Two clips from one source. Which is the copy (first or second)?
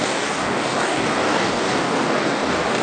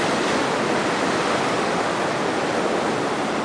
first